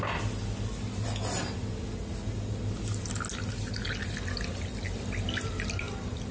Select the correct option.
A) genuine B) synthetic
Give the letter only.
A